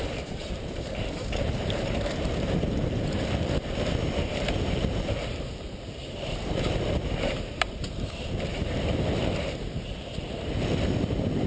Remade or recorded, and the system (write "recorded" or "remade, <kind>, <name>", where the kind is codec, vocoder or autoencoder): remade, vocoder, BigVGAN v2